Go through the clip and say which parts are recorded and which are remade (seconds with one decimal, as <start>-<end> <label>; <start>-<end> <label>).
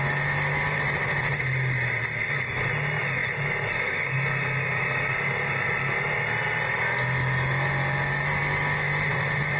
0.0-9.6 recorded